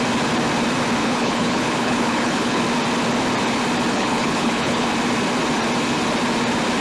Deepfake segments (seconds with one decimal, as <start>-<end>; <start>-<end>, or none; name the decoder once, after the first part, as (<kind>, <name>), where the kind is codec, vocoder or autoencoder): 1.0-2.6 (codec, HILCodec); 3.9-4.9